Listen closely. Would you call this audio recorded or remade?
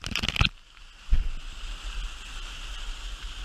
recorded